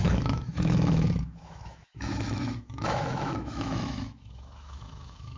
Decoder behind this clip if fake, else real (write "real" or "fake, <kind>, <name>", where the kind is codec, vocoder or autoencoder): fake, autoencoder, DAC-VAE